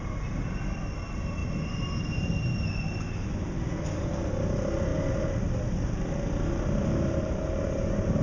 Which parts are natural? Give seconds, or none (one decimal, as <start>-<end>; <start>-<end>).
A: 0.0-8.2